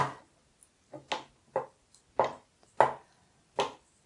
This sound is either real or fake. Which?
real